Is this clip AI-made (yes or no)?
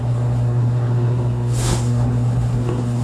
yes